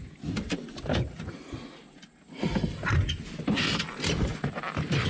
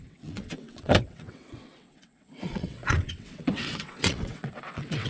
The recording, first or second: first